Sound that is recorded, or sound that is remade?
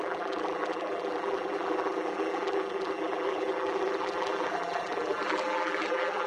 remade